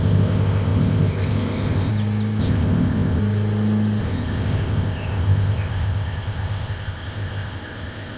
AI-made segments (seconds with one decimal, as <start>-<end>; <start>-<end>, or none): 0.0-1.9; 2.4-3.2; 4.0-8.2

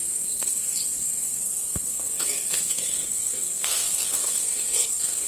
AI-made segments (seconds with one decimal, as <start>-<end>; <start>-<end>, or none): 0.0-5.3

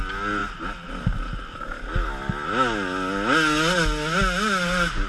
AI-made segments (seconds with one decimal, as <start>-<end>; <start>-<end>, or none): none